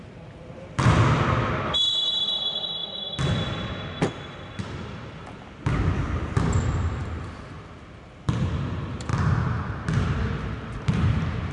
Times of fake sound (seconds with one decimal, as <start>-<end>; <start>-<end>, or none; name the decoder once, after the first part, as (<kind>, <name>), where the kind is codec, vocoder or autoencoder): 0.0-2.8 (vocoder, BigVGAN v2); 3.3-9.1; 10.5-11.5